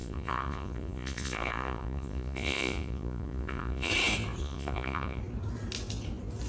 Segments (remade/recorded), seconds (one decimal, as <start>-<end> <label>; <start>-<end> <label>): 0.0-3.9 remade; 3.9-4.4 recorded; 4.4-5.2 remade; 5.2-6.5 recorded